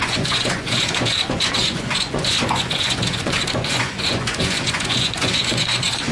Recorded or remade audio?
remade